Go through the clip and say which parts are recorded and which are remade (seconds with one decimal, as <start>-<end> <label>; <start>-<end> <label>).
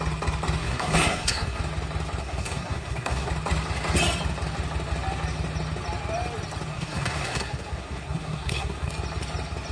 0.0-0.6 recorded; 0.6-1.6 remade; 1.6-2.2 recorded; 2.2-3.3 remade; 3.3-6.7 recorded; 6.7-8.9 remade; 8.9-9.7 recorded